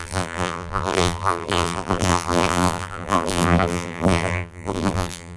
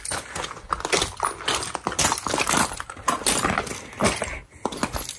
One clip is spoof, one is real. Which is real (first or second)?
second